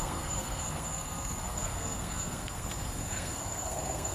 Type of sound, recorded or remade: remade